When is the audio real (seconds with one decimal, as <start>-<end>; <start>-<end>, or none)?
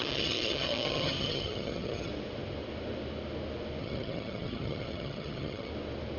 2.1-3.8; 5.7-6.2